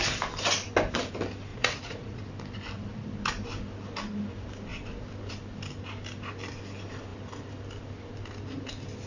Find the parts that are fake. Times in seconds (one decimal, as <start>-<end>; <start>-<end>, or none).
1.5-2.2